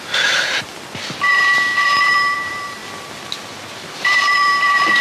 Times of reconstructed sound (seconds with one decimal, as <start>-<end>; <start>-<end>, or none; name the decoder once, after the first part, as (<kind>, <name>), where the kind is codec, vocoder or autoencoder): 0.0-0.7 (vocoder, BigVGAN v2); 1.3-2.8; 4.0-5.0